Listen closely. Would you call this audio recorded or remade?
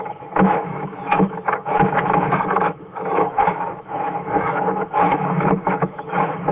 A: remade